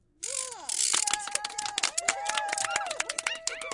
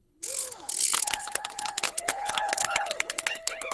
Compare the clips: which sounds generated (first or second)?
second